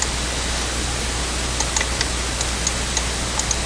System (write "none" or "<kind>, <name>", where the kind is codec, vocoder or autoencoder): none